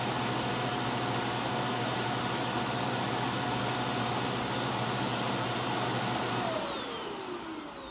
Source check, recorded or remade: recorded